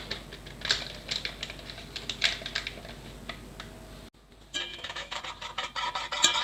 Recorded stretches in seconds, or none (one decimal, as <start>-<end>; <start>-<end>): 0.0-4.7; 5.2-6.4